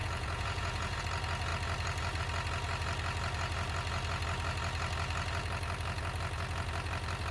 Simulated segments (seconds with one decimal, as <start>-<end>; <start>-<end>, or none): 0.0-1.0